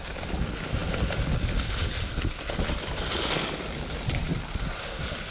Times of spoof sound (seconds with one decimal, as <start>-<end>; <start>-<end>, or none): none